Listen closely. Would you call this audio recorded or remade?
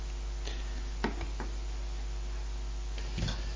recorded